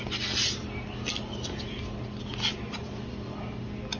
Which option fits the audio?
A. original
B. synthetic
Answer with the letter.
A